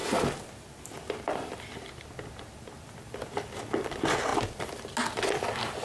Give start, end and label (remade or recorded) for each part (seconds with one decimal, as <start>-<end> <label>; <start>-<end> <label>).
0.0-5.8 recorded